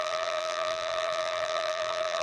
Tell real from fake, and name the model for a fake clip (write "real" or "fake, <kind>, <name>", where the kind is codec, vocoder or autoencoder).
fake, vocoder, BigVGAN v2